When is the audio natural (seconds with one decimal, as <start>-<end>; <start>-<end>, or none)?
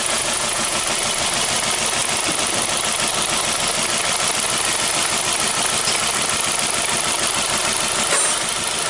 0.8-8.9